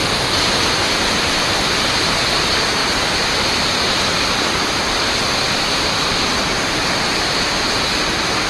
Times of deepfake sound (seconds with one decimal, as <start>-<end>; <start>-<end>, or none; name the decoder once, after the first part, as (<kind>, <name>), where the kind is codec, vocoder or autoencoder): 2.0-2.8 (vocoder, BigVGAN v2); 3.3-8.5